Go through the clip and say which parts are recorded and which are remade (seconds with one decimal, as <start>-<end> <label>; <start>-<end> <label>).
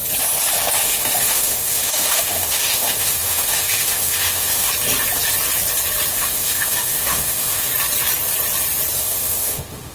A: 0.0-0.8 recorded; 0.8-4.7 remade; 4.7-6.1 recorded; 6.1-7.7 remade; 7.7-9.0 recorded; 9.0-9.9 remade